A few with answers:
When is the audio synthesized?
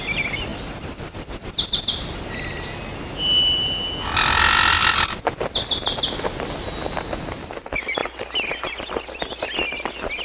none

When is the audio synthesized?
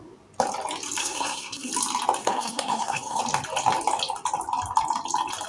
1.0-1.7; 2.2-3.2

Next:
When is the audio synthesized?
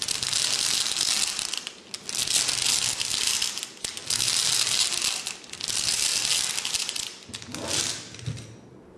none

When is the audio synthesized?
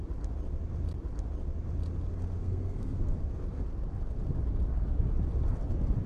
2.4-3.2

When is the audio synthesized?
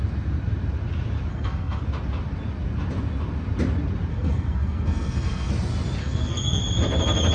1.3-1.8; 4.1-5.5; 6.0-6.6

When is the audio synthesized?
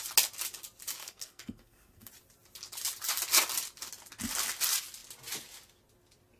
1.0-2.1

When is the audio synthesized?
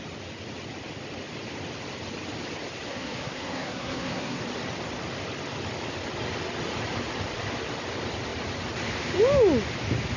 2.9-4.4